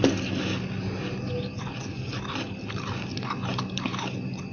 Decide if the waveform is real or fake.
real